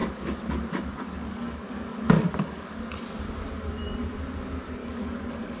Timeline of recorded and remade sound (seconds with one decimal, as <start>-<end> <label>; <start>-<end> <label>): 0.0-2.8 remade; 2.8-4.8 recorded; 4.8-5.6 remade